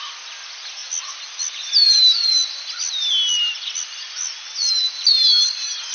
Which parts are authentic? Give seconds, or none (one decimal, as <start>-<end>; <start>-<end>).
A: 0.0-5.9